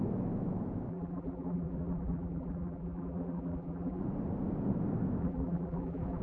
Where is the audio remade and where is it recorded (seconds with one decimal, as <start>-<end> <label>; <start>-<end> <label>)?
0.0-0.9 recorded; 0.9-4.0 remade; 4.0-5.2 recorded; 5.2-6.2 remade